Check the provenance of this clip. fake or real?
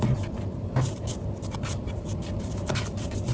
fake